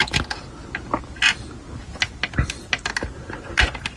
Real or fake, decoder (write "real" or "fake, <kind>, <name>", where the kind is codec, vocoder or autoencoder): real